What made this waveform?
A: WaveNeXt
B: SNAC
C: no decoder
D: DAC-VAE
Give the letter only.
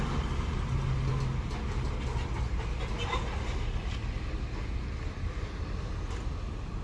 C